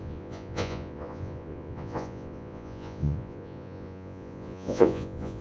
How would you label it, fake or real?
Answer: fake